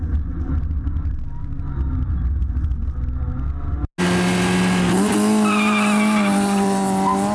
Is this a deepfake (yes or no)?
no